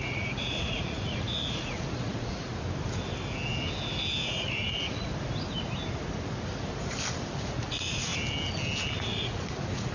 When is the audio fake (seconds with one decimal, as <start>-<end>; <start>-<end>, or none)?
0.0-2.5; 4.2-5.1; 7.4-8.1; 9.0-9.9

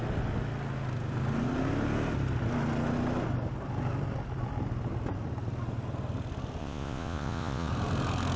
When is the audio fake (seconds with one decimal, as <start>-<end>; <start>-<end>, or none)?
6.6-7.7

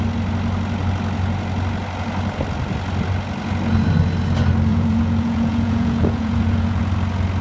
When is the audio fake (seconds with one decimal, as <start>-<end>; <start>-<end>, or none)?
4.7-6.8

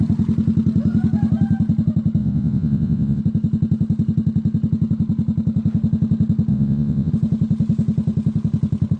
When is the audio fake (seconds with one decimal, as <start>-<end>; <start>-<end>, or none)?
2.2-3.2; 6.5-7.1

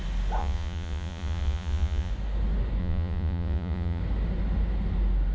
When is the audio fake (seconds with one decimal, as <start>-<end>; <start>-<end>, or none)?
0.4-2.1; 2.8-4.0

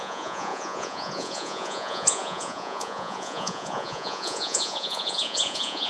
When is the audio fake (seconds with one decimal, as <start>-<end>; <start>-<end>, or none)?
0.0-5.9